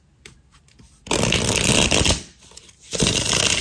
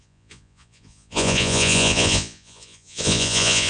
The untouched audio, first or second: first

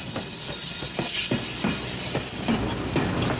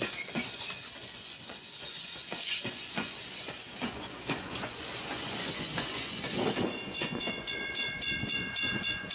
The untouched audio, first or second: first